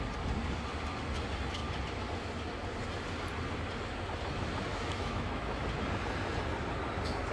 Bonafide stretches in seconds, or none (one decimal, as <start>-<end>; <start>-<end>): 0.0-4.7; 5.6-7.3